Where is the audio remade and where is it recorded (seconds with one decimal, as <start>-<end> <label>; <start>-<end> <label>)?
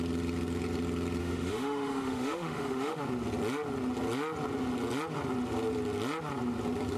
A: 0.0-1.2 recorded; 1.2-3.0 remade; 3.0-7.0 recorded